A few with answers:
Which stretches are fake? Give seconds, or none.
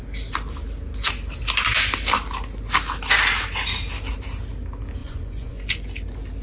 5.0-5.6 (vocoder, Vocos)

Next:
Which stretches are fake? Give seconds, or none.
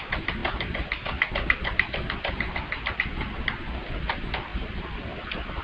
none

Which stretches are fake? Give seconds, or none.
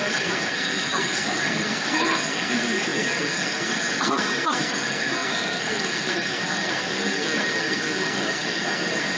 0.0-9.2 (codec, SNAC)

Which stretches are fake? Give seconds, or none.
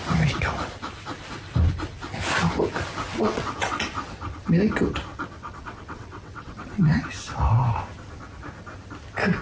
3.1-3.8 (vocoder, WaveNeXt); 5.1-6.9